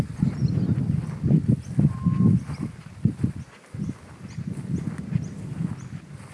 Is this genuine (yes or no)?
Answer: yes